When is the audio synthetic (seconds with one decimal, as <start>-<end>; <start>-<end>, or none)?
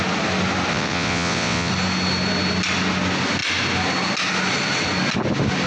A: 0.7-1.7